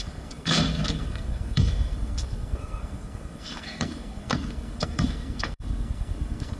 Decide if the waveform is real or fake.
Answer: fake